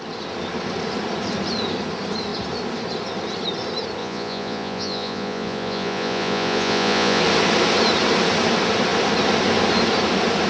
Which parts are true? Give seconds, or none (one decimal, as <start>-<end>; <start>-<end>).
0.0-4.0; 7.2-10.5